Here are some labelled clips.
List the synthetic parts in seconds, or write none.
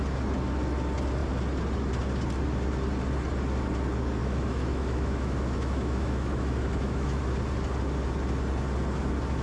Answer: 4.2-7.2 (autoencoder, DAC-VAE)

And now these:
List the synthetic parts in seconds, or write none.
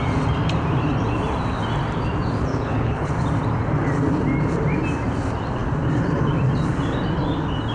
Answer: 2.5-3.1 (codec, HILCodec)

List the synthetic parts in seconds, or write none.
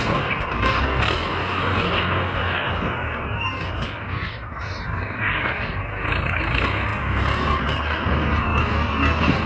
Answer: 0.0-9.5 (codec, DAC)